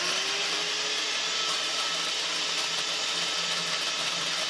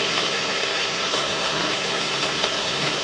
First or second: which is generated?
second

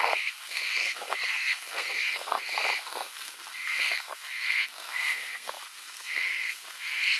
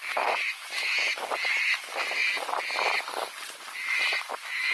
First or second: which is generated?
first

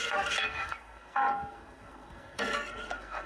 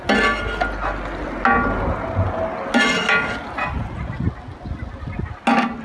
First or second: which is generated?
first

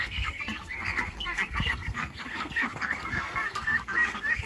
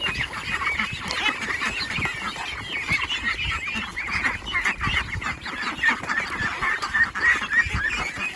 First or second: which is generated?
first